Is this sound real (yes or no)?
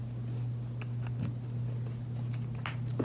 yes